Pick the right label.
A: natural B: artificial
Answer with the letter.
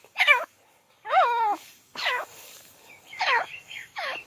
B